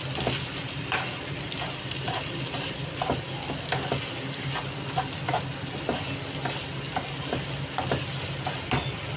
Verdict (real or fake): real